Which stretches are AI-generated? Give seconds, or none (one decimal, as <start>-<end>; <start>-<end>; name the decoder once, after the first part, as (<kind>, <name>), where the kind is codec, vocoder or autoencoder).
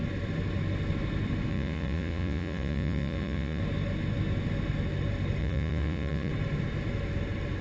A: 1.5-3.6 (vocoder, Vocos); 5.4-6.3